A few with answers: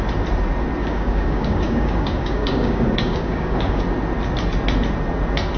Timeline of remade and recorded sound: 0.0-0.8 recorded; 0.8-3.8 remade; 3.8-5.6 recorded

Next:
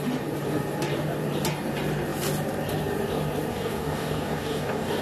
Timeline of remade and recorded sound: 0.0-3.5 recorded; 3.5-5.0 remade

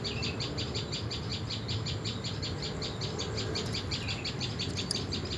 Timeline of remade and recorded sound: 0.0-5.4 recorded

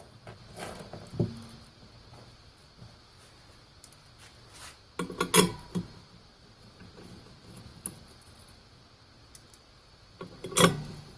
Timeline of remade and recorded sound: 0.0-11.2 recorded

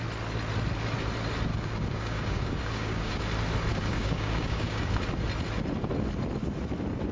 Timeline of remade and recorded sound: 0.0-1.5 recorded; 1.5-3.2 remade; 3.2-3.7 recorded; 3.7-4.9 remade; 4.9-7.1 recorded